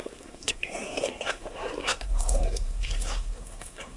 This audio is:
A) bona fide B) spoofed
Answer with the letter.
B